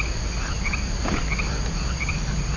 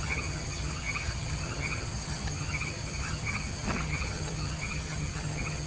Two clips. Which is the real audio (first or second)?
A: first